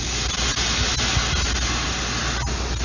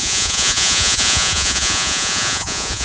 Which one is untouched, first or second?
first